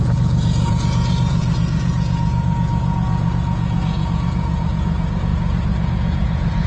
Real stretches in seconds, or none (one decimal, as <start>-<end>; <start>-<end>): none